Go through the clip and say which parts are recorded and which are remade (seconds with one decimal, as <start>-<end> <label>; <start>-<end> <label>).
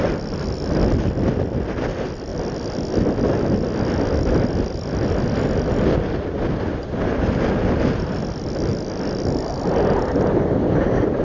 0.0-11.2 recorded